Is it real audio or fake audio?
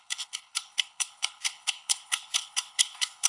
fake